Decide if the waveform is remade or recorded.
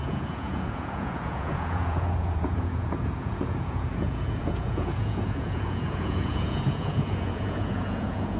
remade